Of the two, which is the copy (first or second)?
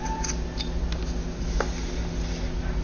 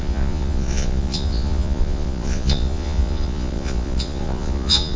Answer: second